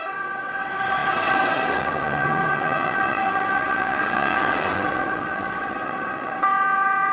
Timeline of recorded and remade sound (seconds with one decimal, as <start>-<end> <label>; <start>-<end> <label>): 0.0-7.1 remade